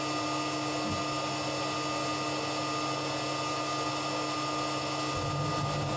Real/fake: real